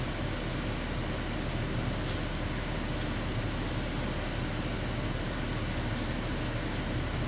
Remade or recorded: recorded